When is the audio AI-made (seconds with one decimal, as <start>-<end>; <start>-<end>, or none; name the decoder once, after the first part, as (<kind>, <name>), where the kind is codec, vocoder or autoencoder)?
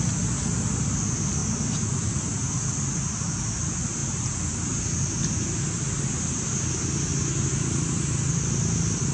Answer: none